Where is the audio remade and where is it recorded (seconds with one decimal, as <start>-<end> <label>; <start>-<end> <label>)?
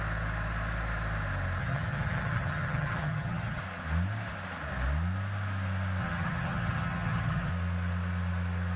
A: 0.0-1.6 recorded; 1.6-3.6 remade; 3.6-6.0 recorded; 6.0-7.5 remade; 7.5-8.8 recorded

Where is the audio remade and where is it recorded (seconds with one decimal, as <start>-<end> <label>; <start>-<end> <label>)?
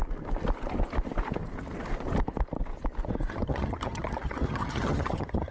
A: 0.0-3.3 recorded; 3.3-5.5 remade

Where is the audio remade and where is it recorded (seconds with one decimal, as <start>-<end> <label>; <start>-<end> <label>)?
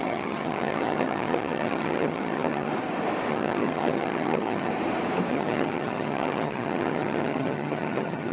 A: 0.0-2.7 remade; 2.7-3.3 recorded; 3.3-4.7 remade; 4.7-5.3 recorded; 5.3-8.3 remade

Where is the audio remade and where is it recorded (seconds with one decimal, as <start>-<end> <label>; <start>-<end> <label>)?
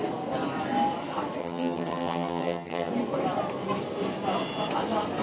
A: 0.0-1.4 recorded; 1.4-2.9 remade; 2.9-5.2 recorded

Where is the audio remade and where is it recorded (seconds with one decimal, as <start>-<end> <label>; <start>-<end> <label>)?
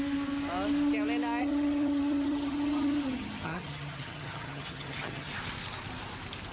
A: 0.0-1.4 recorded; 1.4-5.3 remade; 5.3-6.5 recorded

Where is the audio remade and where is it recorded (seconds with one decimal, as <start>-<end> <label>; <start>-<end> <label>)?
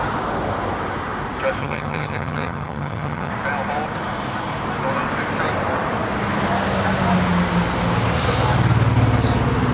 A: 0.0-1.6 recorded; 1.6-3.3 remade; 3.3-9.7 recorded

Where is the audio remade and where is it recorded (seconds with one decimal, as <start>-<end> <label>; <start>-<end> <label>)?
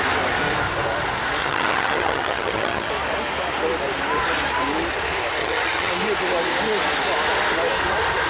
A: 0.0-1.4 recorded; 1.4-2.9 remade; 2.9-5.4 recorded; 5.4-5.9 remade; 5.9-8.3 recorded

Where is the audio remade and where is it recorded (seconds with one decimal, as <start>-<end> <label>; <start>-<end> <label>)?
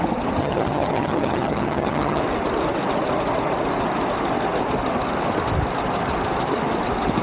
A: 0.0-0.4 recorded; 0.4-2.2 remade; 2.2-7.2 recorded